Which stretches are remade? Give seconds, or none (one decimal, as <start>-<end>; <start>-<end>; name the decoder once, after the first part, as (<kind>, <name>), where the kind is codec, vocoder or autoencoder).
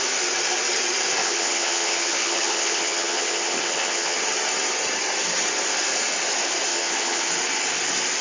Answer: 1.2-4.2 (vocoder, HiFi-GAN); 6.7-7.3